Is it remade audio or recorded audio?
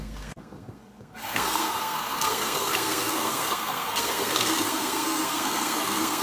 remade